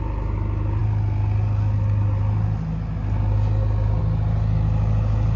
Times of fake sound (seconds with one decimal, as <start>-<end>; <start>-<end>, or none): none

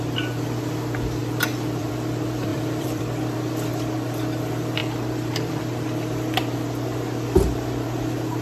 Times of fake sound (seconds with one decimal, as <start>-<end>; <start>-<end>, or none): 1.2-1.9; 2.5-3.0; 4.8-5.6